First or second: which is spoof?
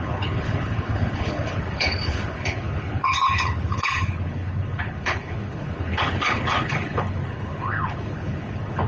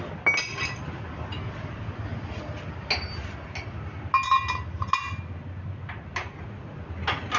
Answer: first